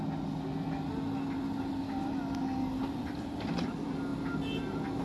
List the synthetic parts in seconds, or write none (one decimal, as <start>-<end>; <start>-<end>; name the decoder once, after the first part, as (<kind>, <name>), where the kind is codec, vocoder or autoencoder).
none